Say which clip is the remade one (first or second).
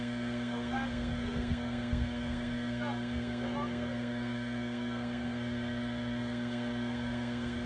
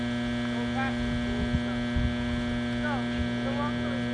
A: first